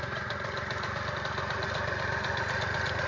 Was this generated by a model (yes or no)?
no